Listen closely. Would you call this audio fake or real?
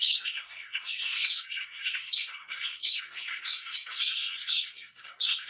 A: fake